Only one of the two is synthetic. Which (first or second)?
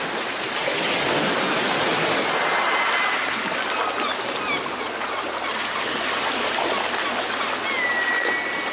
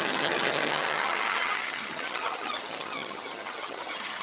second